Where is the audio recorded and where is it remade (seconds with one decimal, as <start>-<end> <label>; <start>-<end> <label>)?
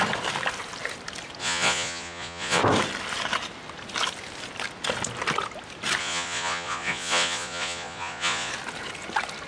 0.0-1.4 recorded; 1.4-2.6 remade; 2.6-6.0 recorded; 6.0-8.5 remade; 8.5-9.5 recorded